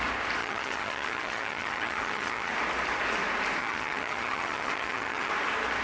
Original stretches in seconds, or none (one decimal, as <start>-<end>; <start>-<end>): 0.0-0.4; 2.5-3.6; 5.3-5.8